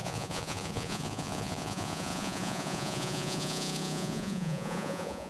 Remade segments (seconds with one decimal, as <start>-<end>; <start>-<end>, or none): 0.0-5.3